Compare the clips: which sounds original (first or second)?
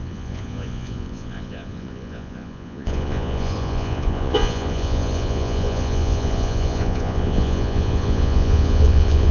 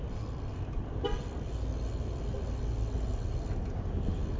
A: second